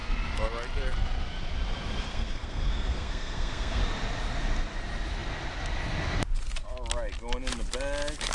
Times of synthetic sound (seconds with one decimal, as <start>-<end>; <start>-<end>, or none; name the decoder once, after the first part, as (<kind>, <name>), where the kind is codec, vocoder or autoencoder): 2.1-3.8 (codec, SNAC)